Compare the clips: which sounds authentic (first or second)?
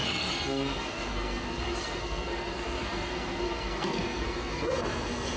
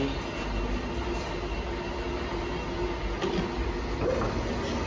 second